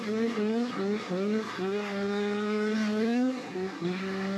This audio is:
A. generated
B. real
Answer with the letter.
A